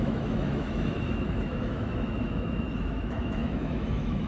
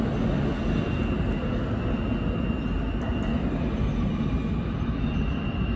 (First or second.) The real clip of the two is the second